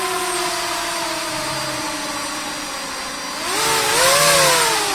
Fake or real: real